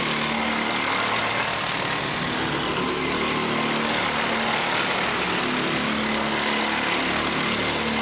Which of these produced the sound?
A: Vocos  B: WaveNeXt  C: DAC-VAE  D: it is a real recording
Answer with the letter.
D